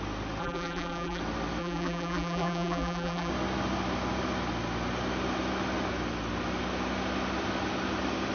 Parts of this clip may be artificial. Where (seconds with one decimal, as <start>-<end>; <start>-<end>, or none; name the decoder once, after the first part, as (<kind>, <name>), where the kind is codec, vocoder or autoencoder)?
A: 0.4-1.2 (vocoder, BigVGAN v2); 1.6-3.3

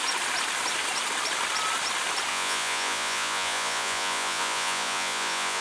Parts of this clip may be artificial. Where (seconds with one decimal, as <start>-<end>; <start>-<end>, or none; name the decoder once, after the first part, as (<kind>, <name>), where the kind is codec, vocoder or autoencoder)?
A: 2.3-5.6 (vocoder, Vocos)